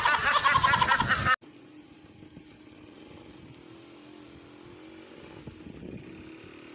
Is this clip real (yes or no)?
yes